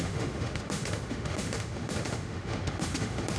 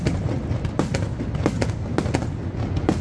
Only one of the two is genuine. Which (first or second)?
second